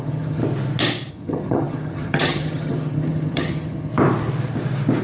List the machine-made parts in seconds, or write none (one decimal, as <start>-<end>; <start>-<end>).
0.0-0.4; 1.1-3.9